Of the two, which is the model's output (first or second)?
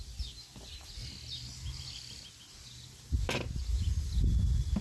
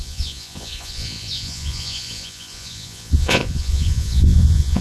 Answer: second